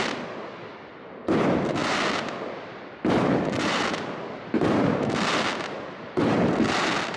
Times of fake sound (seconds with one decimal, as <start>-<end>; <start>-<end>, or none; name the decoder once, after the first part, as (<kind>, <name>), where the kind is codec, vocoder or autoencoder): none